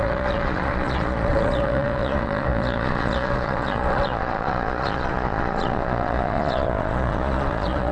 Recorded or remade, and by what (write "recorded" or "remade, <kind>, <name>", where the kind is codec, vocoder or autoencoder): remade, vocoder, Vocos